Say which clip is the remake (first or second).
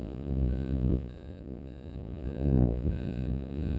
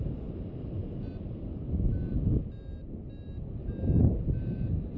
first